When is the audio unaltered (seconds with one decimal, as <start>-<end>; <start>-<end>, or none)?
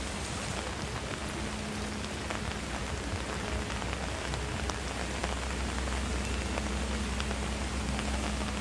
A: 0.0-8.6